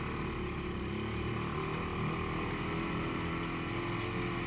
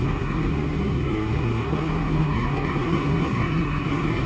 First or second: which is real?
first